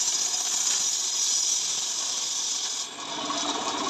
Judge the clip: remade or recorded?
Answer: recorded